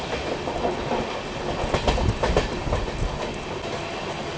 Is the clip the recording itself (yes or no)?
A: yes